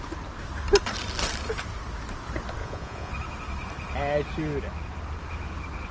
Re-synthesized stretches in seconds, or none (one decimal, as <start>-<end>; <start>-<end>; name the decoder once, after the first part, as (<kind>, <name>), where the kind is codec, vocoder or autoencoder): 2.6-3.1 (vocoder, Vocos)

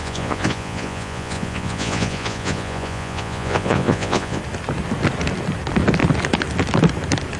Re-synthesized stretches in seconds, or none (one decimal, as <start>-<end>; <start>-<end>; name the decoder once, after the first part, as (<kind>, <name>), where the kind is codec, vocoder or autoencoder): 0.0-4.4 (vocoder, Vocos)

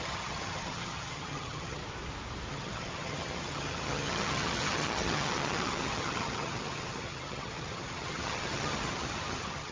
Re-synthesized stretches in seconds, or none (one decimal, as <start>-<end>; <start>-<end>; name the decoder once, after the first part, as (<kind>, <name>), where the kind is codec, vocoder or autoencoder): 0.0-1.8 (vocoder, HiFi-GAN); 2.5-9.7

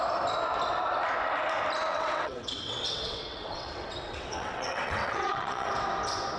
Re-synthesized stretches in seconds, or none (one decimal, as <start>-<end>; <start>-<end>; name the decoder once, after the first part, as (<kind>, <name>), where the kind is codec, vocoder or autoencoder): 1.9-5.7 (vocoder, WaveNeXt)

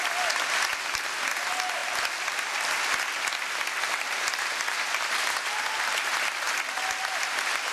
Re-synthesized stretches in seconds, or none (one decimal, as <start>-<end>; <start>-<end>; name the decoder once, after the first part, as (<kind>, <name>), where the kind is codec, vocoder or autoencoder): 1.8-5.6 (vocoder, BigVGAN v2)

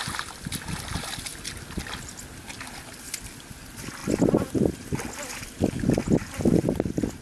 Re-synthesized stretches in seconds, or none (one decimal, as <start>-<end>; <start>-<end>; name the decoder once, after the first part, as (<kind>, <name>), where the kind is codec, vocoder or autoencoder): none

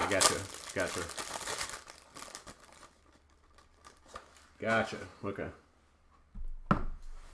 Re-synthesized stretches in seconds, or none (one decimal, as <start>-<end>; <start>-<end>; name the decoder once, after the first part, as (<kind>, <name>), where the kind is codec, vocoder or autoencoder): none